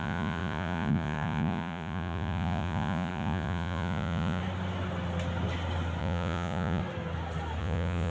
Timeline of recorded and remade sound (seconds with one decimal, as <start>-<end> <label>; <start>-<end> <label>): 0.0-4.4 remade; 4.4-6.0 recorded; 6.0-6.8 remade; 6.8-7.6 recorded; 7.6-8.1 remade